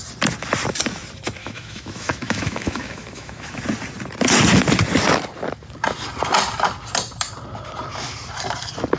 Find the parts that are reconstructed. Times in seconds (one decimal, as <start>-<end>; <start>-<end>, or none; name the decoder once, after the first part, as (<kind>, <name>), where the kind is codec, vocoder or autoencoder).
1.4-3.6 (autoencoder, DAC-VAE)